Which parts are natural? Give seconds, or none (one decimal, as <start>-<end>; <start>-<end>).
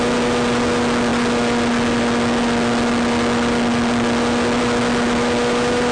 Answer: 0.0-5.9